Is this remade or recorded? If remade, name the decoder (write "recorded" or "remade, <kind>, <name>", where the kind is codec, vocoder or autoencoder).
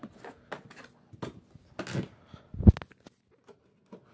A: recorded